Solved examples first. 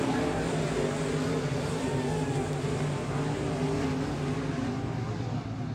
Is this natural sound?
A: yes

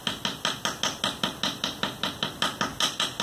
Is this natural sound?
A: yes